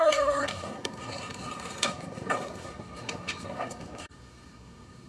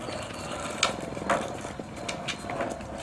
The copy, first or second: first